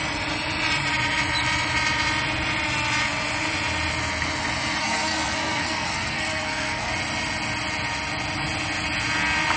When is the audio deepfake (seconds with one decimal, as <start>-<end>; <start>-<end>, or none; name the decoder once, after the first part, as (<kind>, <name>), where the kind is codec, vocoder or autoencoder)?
4.8-6.9 (codec, SNAC)